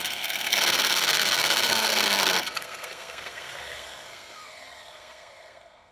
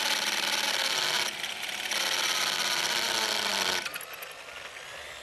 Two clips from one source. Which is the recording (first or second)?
second